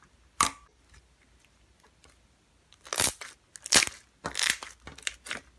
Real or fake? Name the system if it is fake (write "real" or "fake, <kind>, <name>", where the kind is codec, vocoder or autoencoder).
real